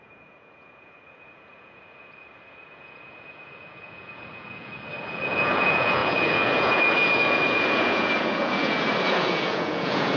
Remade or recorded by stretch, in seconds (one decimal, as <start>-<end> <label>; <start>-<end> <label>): 0.0-10.2 remade